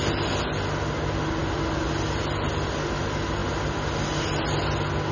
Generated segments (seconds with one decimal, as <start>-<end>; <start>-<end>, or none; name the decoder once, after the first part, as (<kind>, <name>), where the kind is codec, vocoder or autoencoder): none